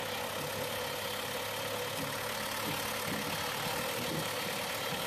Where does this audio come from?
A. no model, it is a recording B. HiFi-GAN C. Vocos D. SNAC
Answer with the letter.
A